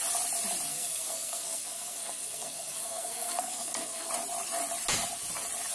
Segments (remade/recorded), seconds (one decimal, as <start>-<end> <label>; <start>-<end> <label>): 0.0-0.7 recorded; 0.7-4.1 remade; 4.1-5.7 recorded